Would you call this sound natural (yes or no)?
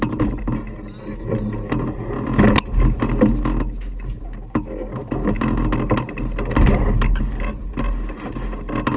yes